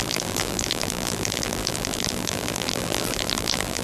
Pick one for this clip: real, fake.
fake